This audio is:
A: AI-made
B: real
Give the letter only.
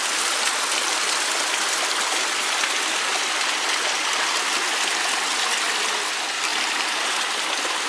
B